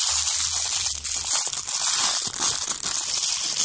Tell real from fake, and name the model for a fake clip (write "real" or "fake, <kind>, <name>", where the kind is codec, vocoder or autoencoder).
real